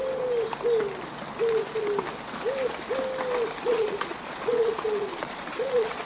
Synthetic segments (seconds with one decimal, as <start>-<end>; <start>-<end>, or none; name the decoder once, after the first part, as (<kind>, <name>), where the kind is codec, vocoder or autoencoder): 3.7-6.1 (vocoder, Vocos)